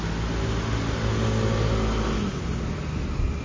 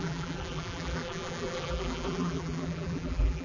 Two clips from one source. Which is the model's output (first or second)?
second